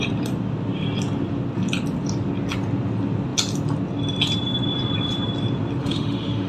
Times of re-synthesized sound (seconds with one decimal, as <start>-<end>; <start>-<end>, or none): 5.8-6.5